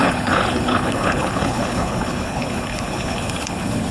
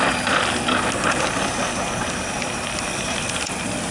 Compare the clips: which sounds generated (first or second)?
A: first